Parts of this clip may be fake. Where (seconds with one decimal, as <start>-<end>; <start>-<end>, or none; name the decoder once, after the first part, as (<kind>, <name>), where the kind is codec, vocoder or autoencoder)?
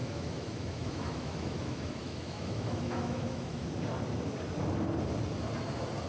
0.0-3.7 (autoencoder, DAC-VAE)